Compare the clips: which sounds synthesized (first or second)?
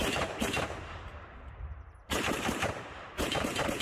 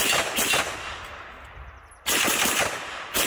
first